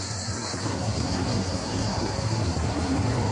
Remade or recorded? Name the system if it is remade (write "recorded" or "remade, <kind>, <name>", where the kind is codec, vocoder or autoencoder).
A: remade, codec, SNAC